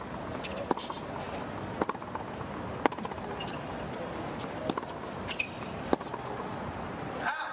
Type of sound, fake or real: real